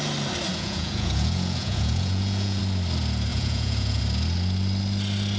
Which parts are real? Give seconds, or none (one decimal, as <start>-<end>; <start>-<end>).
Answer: 0.0-0.5; 2.6-3.3; 4.0-5.4